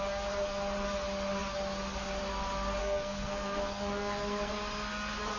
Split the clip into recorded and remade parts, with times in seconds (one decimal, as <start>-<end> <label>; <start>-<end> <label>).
0.0-2.8 recorded; 2.8-4.5 remade; 4.5-5.4 recorded